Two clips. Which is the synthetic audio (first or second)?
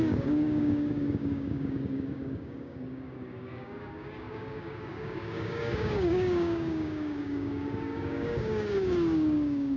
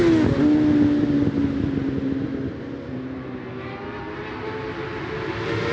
first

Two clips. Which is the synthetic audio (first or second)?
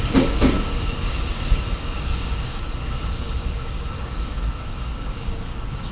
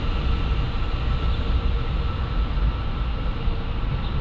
first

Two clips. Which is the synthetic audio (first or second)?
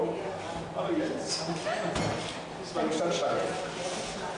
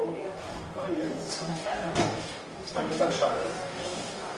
second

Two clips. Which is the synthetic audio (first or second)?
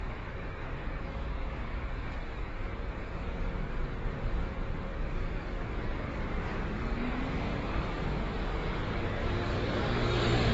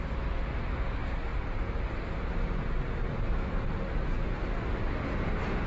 first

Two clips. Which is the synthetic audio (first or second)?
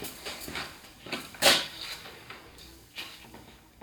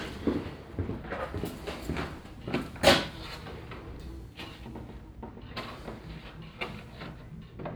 first